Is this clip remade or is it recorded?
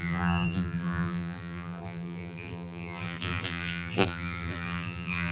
remade